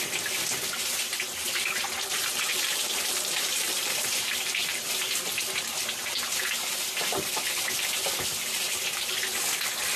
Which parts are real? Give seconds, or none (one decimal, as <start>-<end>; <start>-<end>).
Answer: 0.0-1.4; 5.1-10.0